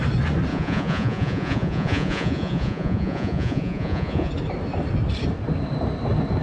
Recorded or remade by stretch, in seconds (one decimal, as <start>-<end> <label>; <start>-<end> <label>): 0.0-0.5 recorded; 0.5-4.3 remade; 4.3-6.4 recorded